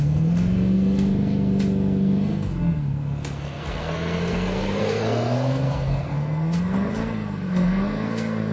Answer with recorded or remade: remade